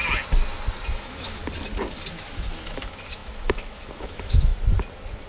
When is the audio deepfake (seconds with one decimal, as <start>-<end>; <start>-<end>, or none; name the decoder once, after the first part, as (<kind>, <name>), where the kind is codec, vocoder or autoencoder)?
0.9-1.4 (autoencoder, DAC-VAE); 2.1-4.5